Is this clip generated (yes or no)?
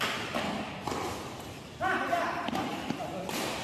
yes